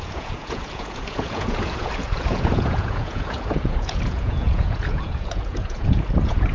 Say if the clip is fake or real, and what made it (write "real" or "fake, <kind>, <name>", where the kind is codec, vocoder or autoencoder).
fake, vocoder, Vocos